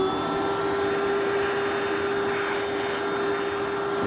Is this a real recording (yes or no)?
yes